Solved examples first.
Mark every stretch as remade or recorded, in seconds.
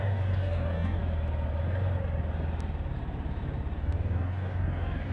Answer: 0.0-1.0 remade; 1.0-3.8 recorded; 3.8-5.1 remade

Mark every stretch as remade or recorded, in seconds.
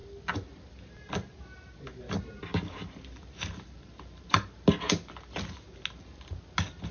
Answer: 0.0-6.9 recorded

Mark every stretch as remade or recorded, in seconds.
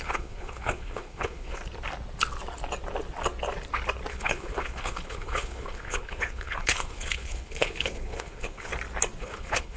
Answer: 0.0-1.6 remade; 1.6-4.1 recorded; 4.1-8.7 remade; 8.7-9.2 recorded; 9.2-9.8 remade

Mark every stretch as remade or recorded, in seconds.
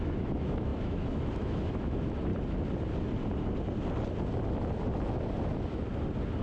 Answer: 0.0-2.3 remade; 2.3-6.4 recorded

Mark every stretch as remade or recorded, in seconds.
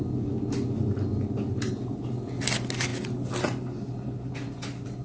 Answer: 0.0-5.0 recorded